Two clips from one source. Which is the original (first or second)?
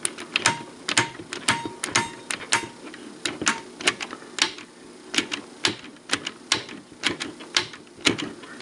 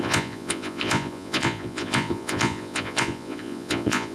first